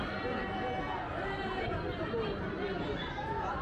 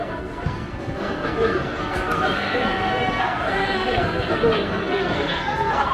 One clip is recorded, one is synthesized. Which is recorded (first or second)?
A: first